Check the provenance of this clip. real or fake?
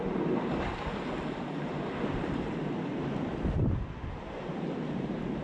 fake